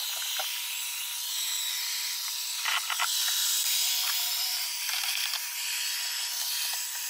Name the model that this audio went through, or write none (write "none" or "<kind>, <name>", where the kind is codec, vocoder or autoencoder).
none